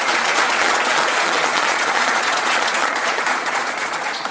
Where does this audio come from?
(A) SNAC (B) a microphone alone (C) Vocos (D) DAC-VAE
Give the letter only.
C